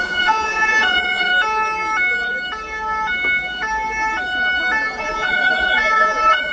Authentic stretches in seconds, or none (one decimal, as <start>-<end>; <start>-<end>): 1.3-5.0